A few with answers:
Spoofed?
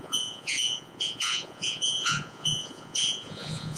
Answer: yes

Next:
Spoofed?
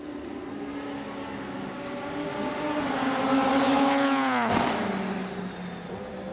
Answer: no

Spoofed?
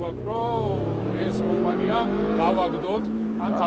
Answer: yes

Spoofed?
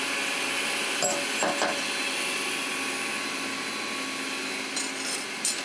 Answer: no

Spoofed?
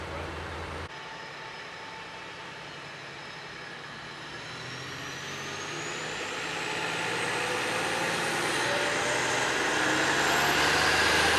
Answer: no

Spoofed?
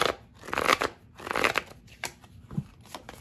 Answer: yes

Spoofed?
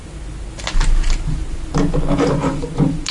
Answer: no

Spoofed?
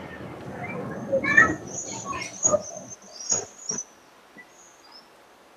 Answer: no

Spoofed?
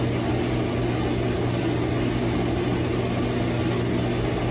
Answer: no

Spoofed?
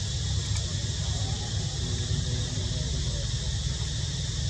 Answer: no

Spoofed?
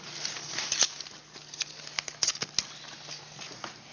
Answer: no